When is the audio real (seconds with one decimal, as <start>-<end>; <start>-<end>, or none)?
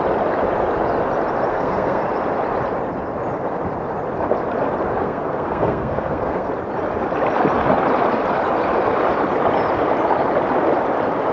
0.0-1.5; 2.0-5.0; 6.5-11.3